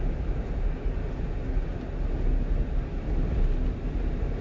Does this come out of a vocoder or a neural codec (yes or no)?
no